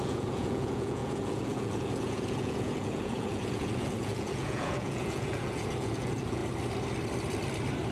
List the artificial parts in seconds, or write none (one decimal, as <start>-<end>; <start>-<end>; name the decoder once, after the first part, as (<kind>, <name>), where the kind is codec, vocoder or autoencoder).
0.0-6.4 (vocoder, Vocos)